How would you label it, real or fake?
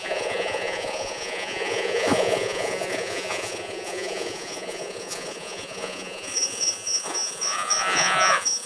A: fake